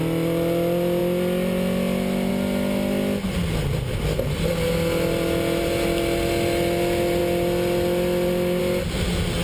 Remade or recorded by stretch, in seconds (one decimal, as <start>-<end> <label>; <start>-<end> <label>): 0.0-9.4 recorded